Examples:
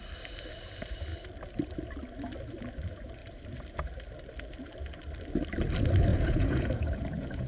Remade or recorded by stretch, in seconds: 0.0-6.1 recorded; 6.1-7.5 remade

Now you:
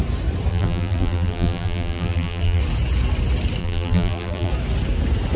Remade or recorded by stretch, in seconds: 0.0-0.5 recorded; 0.5-2.6 remade; 2.6-3.6 recorded; 3.6-4.5 remade; 4.5-5.4 recorded